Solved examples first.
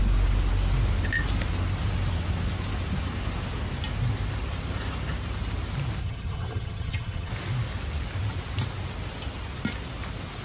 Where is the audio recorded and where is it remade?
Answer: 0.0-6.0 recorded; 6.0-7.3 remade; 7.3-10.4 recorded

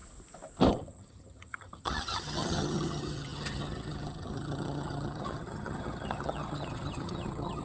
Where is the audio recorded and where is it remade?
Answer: 0.0-0.7 recorded; 0.7-7.6 remade

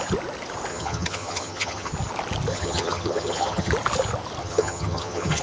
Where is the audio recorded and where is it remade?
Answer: 0.0-0.7 recorded; 0.7-1.9 remade; 1.9-2.5 recorded; 2.5-3.7 remade; 3.7-4.4 recorded; 4.4-5.4 remade

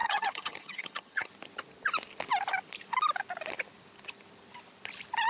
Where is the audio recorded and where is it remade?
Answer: 0.0-1.3 remade; 1.3-5.3 recorded

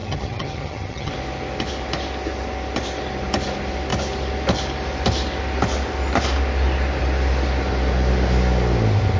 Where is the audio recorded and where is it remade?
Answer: 0.0-1.1 remade; 1.1-9.2 recorded

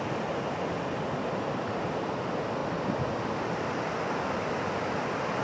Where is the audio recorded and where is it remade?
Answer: 0.0-5.4 recorded

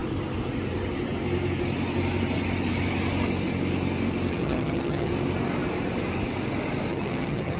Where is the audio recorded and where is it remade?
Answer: 0.0-4.3 recorded; 4.3-5.1 remade; 5.1-6.9 recorded; 6.9-7.6 remade